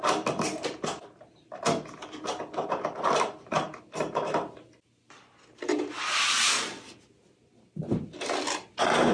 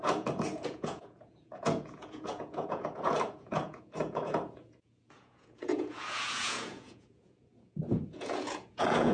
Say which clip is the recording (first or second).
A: first